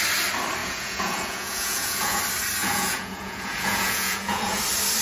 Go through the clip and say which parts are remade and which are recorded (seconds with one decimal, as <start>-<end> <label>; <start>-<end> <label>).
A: 0.0-0.6 recorded; 0.6-2.2 remade; 2.2-2.6 recorded; 2.6-4.6 remade; 4.6-5.0 recorded